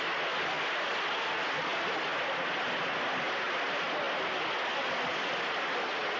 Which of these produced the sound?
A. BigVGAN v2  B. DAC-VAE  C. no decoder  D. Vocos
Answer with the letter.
C